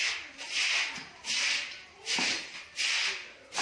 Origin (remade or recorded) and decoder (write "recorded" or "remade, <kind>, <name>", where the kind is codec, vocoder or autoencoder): recorded